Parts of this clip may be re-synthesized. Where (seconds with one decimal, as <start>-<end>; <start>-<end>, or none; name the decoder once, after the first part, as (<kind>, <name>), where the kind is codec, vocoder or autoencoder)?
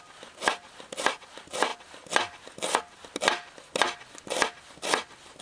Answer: none